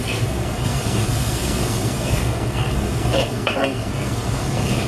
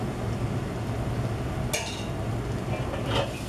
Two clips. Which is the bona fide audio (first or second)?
second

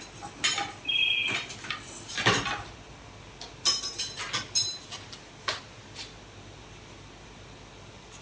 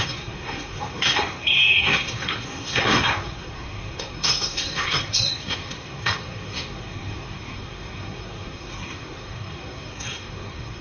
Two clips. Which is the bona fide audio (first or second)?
first